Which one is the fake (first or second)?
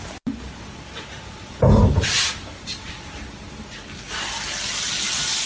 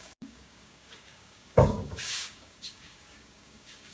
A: second